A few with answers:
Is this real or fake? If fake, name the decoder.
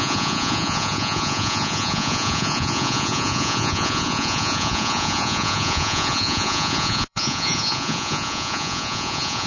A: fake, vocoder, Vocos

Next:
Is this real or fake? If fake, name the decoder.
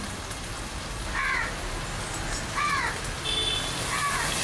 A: real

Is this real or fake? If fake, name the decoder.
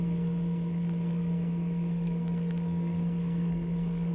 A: fake, codec, SNAC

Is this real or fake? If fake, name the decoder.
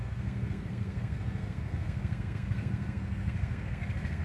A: fake, codec, SNAC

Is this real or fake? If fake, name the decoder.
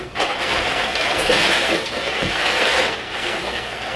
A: fake, codec, SNAC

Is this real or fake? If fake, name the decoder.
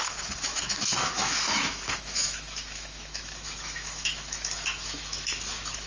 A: fake, autoencoder, DAC-VAE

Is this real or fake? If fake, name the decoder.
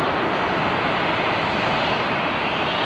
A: real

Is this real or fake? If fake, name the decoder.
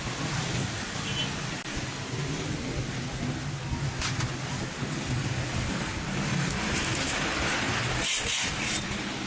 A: real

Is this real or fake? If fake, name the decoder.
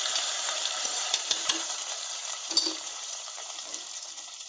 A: fake, vocoder, BigVGAN v2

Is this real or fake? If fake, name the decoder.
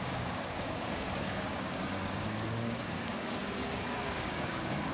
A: fake, codec, DAC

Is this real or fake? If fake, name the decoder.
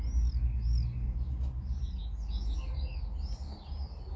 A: real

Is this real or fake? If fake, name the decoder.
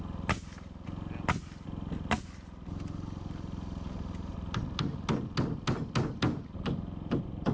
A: real